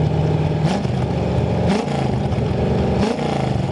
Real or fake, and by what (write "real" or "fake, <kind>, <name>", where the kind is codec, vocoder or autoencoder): real